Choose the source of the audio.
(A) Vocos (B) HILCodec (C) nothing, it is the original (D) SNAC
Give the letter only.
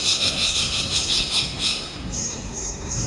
D